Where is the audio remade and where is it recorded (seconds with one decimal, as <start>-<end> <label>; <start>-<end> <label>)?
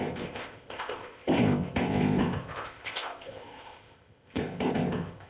0.0-5.3 remade